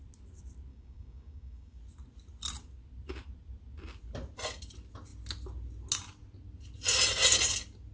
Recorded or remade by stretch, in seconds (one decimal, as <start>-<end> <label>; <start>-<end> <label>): 0.0-0.7 recorded; 0.7-1.8 remade; 1.8-7.9 recorded